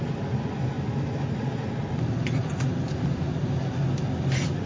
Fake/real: real